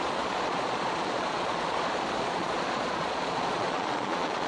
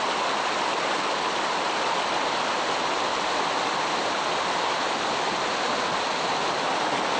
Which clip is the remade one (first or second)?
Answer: first